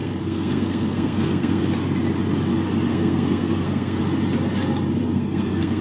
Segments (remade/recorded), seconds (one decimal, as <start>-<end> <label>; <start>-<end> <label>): 0.0-1.6 remade; 1.6-2.9 recorded; 2.9-4.0 remade; 4.0-5.0 recorded; 5.0-5.8 remade